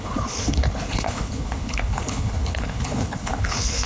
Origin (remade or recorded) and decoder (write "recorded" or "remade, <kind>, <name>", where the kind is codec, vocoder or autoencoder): remade, codec, HILCodec